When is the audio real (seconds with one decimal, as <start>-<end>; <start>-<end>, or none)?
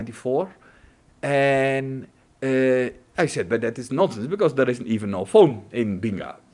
0.0-5.5